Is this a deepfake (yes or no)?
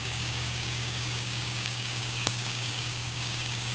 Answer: yes